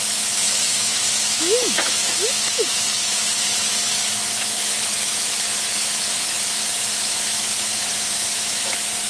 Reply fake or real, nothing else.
fake